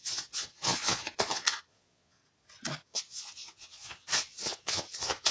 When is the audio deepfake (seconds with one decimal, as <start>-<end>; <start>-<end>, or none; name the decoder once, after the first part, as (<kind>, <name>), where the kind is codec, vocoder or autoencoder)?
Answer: 0.0-2.2 (vocoder, Vocos); 2.8-5.3